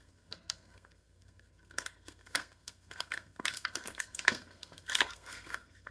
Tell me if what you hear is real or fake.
fake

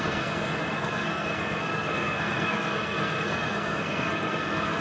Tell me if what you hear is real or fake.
fake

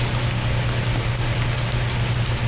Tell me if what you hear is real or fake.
real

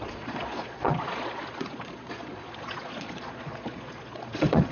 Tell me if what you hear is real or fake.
fake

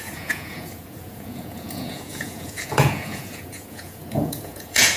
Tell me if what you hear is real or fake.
fake